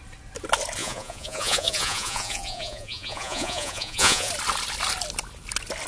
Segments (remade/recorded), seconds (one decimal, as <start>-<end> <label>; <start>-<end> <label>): 0.0-0.8 recorded; 0.8-4.3 remade; 4.3-5.9 recorded